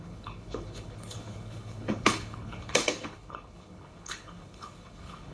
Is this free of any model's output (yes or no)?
no